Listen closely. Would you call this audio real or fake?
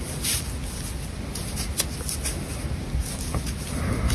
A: real